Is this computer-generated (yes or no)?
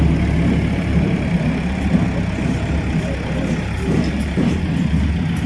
no